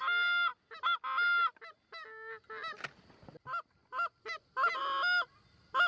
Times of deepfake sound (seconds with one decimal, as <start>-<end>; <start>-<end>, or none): none